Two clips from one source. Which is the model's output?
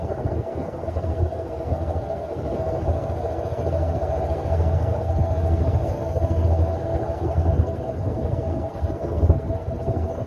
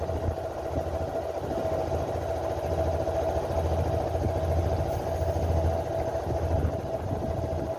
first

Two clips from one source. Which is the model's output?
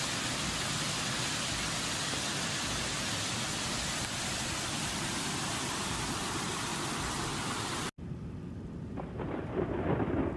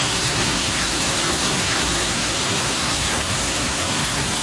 second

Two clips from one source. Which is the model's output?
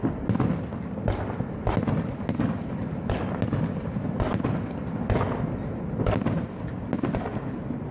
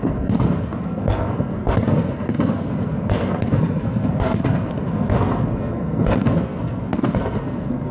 second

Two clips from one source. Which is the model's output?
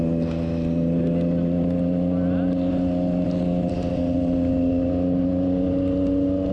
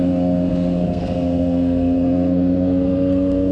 second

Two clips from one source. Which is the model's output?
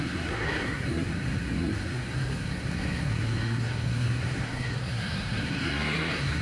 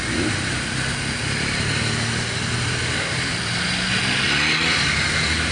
first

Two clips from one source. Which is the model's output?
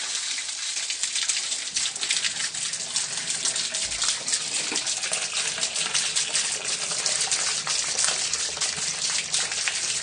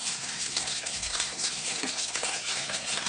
second